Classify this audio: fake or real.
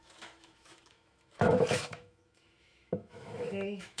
fake